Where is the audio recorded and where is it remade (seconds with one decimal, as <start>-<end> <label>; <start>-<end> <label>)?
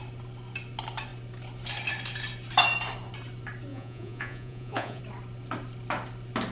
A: 0.0-3.7 recorded; 3.7-5.0 remade; 5.0-6.5 recorded